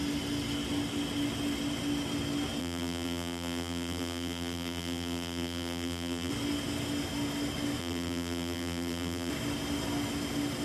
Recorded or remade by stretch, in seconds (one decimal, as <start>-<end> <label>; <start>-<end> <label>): 0.0-2.6 recorded; 2.6-6.3 remade; 6.3-7.8 recorded; 7.8-9.3 remade; 9.3-10.6 recorded